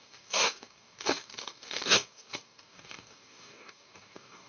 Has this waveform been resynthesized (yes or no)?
yes